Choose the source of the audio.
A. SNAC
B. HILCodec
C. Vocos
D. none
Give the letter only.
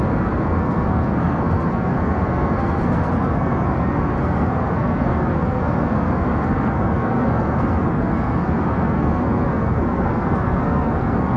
A